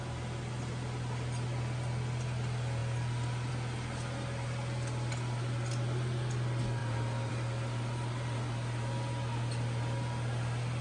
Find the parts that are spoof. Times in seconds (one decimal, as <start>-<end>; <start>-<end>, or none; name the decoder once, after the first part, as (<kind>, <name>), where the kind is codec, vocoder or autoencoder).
none